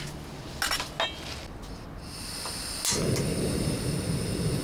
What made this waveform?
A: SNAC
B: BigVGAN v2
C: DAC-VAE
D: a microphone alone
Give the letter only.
D